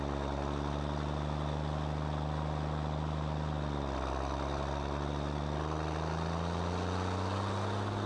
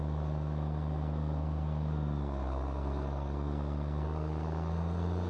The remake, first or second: second